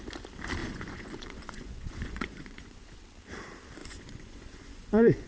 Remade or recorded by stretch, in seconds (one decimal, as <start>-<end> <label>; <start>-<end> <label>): 0.0-0.6 recorded; 0.6-3.0 remade; 3.0-3.8 recorded; 3.8-5.3 remade